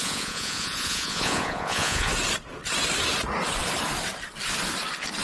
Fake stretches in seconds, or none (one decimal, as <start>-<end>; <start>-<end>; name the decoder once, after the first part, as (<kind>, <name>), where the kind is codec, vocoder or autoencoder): 0.0-2.1 (vocoder, Vocos)